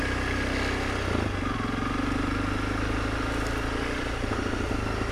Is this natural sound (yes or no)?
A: yes